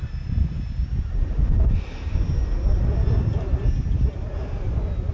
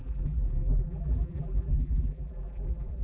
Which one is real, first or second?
first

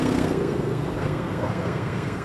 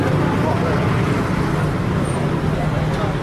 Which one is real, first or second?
second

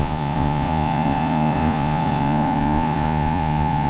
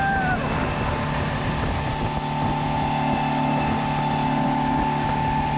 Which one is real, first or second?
second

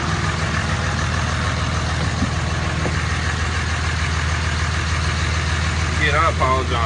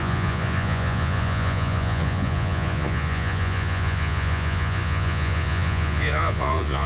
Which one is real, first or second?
first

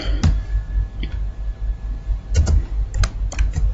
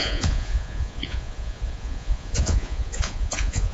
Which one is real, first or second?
first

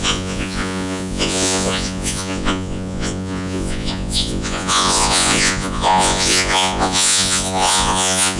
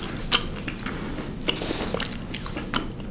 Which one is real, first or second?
second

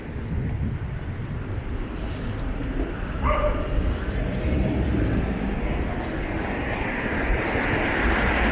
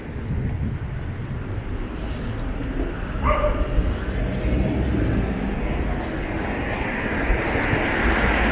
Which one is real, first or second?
second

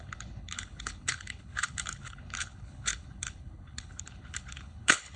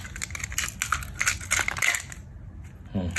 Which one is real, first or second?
second